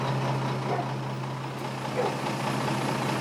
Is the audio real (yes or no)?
yes